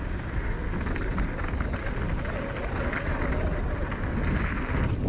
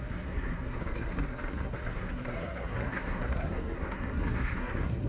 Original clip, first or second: first